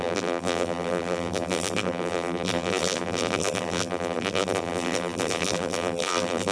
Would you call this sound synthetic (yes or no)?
yes